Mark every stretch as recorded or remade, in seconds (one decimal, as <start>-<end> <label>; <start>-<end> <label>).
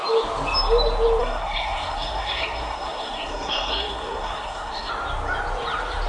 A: 0.0-1.2 recorded; 1.2-4.9 remade; 4.9-6.1 recorded